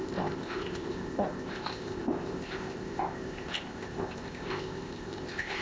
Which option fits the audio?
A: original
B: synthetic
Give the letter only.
B